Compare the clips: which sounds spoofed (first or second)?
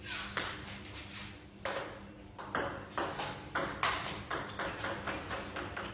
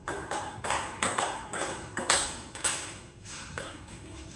second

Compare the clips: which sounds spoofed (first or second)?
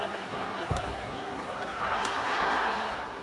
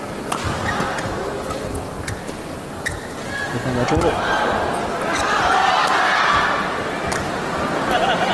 first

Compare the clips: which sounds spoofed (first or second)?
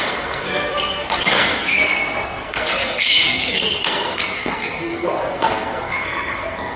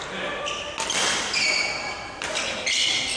first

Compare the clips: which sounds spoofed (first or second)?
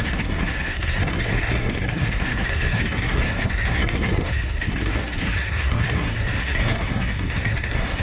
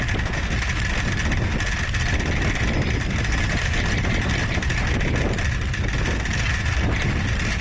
first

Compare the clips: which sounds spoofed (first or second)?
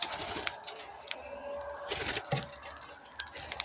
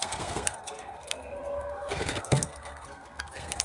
second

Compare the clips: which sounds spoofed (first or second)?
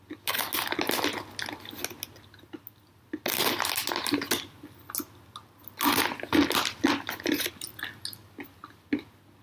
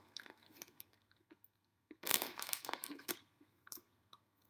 second